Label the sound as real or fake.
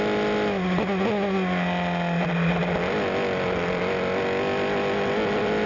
real